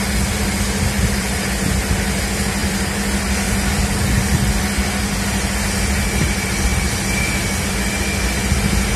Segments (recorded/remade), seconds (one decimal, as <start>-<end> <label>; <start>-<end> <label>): 0.0-9.0 recorded